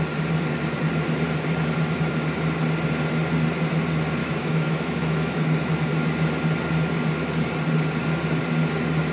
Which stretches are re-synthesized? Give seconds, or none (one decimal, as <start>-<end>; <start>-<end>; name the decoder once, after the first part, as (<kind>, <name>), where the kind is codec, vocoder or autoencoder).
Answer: 4.2-5.7 (autoencoder, DAC-VAE)

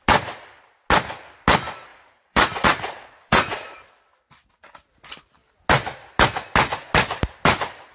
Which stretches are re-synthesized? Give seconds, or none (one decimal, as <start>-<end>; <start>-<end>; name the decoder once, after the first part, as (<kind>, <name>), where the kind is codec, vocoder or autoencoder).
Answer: 1.9-3.9 (vocoder, Vocos)

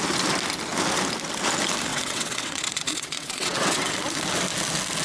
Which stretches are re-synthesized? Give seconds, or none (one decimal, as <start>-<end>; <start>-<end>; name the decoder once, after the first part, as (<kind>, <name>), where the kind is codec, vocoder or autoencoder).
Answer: 1.9-3.9 (vocoder, WaveNeXt)

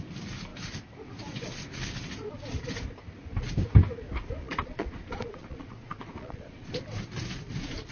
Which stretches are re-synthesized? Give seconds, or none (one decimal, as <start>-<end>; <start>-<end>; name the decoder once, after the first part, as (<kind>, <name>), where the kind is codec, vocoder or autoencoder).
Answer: 4.4-6.8 (vocoder, Vocos)

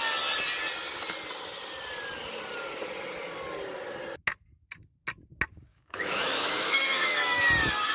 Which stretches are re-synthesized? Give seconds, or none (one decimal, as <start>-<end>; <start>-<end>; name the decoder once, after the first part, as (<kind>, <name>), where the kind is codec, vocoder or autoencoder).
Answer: 5.7-7.4 (autoencoder, DAC-VAE)

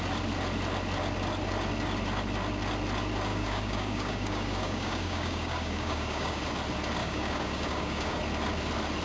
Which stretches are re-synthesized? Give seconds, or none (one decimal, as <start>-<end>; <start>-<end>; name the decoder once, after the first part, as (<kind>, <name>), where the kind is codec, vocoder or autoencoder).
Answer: 3.3-6.4 (codec, DAC); 7.0-8.2

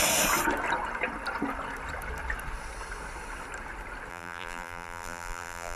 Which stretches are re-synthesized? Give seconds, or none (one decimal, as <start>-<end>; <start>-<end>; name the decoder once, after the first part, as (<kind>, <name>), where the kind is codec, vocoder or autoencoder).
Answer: 4.1-5.8 (vocoder, BigVGAN v2)